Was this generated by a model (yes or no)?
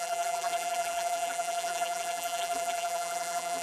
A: yes